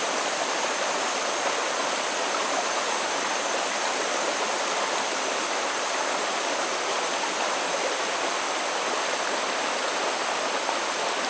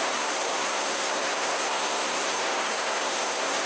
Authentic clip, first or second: first